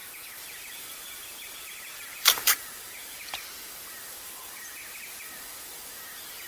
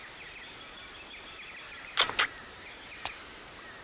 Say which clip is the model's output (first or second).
first